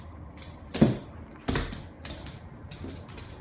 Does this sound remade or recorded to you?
recorded